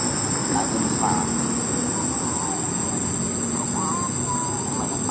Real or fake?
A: real